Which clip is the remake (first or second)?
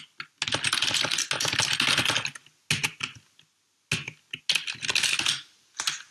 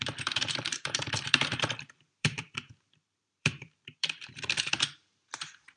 second